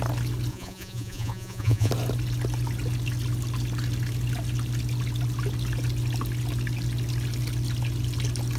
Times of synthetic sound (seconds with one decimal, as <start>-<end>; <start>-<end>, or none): 0.5-1.9

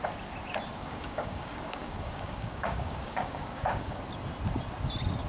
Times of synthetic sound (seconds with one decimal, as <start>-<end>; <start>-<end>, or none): 0.8-4.0

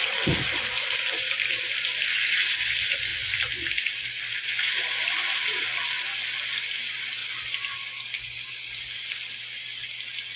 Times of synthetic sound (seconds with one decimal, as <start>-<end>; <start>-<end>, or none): none